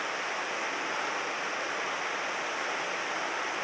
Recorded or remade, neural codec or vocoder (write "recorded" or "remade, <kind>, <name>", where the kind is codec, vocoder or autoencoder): recorded